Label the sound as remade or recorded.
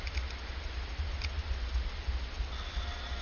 recorded